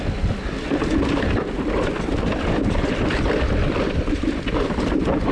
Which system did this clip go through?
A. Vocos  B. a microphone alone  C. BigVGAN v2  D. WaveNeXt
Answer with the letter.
C